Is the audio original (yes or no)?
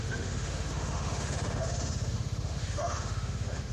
no